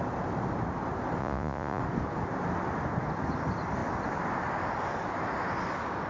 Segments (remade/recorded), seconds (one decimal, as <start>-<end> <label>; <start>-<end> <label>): 0.0-1.2 recorded; 1.2-1.8 remade; 1.8-6.1 recorded